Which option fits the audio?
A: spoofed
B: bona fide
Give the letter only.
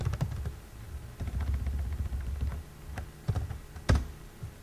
B